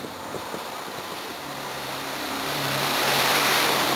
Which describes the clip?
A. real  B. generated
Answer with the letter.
B